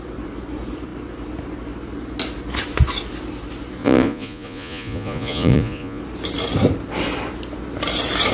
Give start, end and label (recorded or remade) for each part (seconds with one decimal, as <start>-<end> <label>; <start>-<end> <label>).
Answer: 0.0-3.8 recorded; 3.8-6.0 remade; 6.0-8.3 recorded